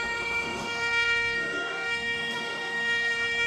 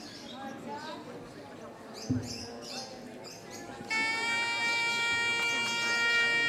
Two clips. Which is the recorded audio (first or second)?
second